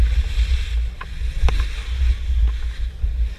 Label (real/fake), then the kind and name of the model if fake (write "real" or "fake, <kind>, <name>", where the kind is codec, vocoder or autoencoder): real